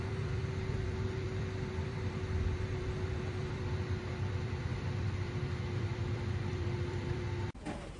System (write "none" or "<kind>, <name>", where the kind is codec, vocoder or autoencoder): vocoder, BigVGAN v2